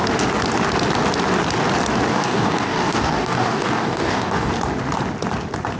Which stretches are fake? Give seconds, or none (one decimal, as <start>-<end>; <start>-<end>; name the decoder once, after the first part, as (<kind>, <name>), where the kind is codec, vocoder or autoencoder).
2.1-4.5 (codec, DAC)